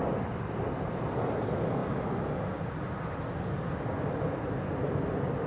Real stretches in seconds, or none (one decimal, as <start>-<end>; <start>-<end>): 0.0-5.5